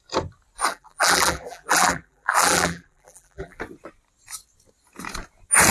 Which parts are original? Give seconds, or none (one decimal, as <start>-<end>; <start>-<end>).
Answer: 0.0-0.7; 3.6-5.7